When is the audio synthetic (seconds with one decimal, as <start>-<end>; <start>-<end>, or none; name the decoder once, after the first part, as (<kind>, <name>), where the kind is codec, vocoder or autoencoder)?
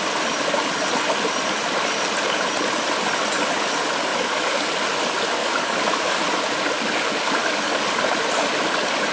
4.1-4.7 (codec, DAC); 5.4-6.2; 7.4-8.1